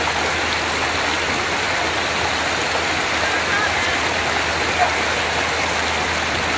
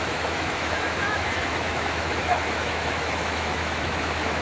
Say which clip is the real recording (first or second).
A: first